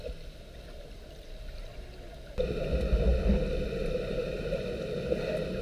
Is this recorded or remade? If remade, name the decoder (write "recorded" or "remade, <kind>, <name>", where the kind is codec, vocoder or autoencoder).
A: recorded